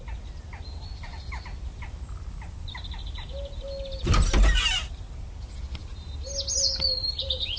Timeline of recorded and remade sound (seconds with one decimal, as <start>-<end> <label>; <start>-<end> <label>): 0.0-7.6 recorded